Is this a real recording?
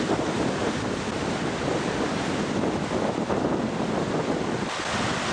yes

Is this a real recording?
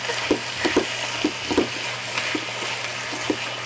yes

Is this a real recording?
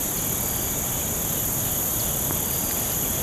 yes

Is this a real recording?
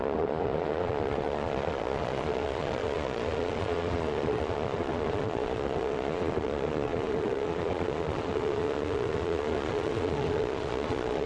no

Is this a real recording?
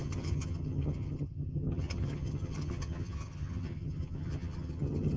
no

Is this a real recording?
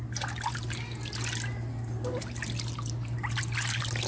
yes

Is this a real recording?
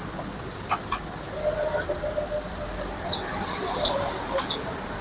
yes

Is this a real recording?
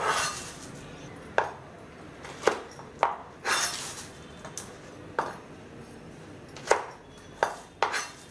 yes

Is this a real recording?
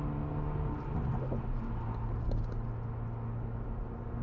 yes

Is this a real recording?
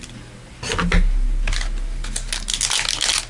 yes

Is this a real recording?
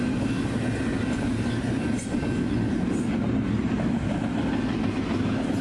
yes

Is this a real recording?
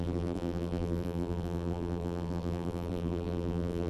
no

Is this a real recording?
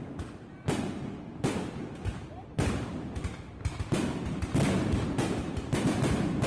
yes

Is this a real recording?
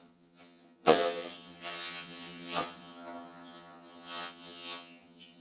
no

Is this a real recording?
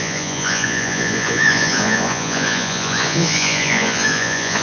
no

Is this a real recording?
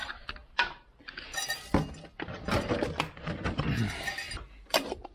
yes